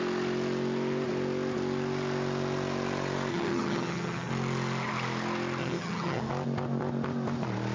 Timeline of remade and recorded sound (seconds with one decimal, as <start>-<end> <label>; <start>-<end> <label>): 0.0-3.3 recorded; 3.3-4.3 remade; 4.3-5.6 recorded; 5.6-6.2 remade; 6.2-7.7 recorded